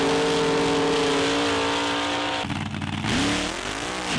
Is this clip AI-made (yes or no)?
no